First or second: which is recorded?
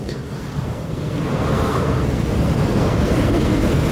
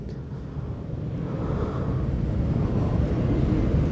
second